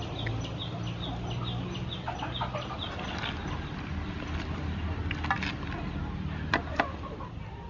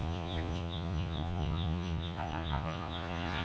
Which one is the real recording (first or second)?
first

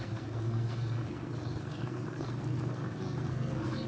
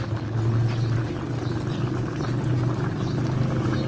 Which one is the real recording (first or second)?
second